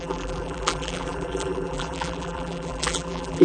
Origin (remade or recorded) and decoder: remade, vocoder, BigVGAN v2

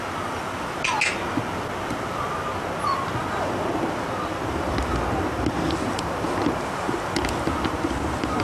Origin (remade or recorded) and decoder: recorded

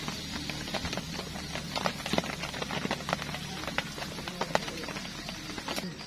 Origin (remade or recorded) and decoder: recorded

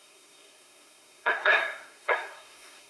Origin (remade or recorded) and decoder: remade, codec, SNAC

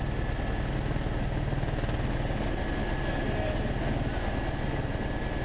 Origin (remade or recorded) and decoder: recorded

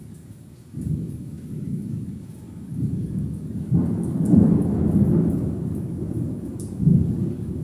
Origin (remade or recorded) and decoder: remade, codec, DAC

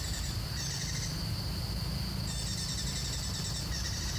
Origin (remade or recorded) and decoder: recorded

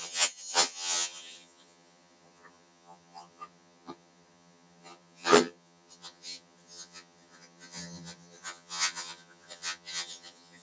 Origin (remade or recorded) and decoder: remade, vocoder, HiFi-GAN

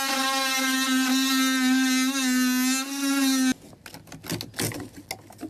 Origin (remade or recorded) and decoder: recorded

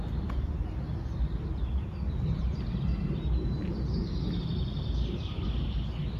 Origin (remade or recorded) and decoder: recorded